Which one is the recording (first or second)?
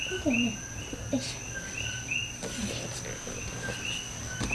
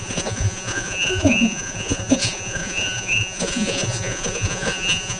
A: first